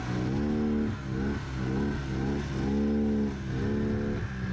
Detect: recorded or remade recorded